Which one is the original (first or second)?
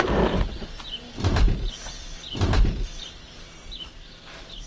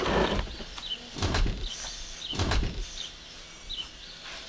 first